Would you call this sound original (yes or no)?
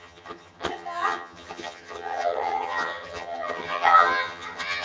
no